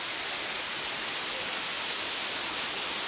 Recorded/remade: recorded